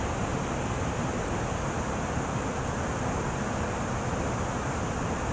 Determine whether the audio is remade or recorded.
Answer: recorded